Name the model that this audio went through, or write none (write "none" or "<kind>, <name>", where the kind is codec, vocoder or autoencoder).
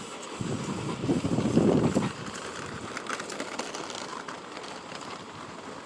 vocoder, BigVGAN v2